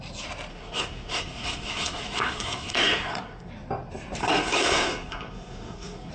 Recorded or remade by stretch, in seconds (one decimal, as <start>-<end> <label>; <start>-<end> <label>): 0.0-0.5 recorded; 0.5-3.5 remade; 3.5-4.2 recorded; 4.2-6.1 remade